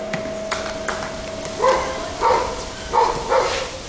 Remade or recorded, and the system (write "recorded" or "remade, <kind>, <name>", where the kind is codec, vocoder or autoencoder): recorded